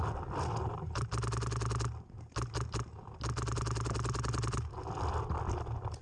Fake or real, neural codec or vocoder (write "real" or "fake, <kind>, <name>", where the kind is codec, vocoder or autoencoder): real